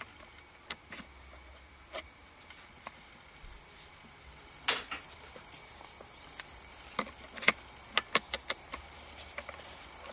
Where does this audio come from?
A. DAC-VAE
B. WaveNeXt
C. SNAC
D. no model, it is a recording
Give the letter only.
D